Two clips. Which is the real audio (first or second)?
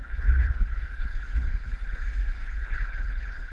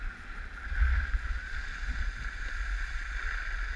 second